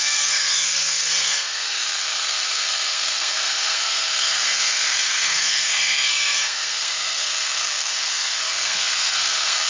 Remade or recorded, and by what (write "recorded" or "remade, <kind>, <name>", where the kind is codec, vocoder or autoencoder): remade, codec, SNAC